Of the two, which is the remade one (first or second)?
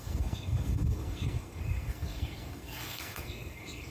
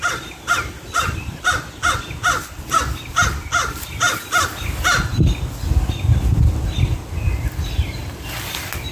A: first